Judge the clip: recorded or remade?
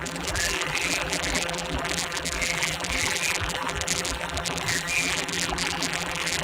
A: remade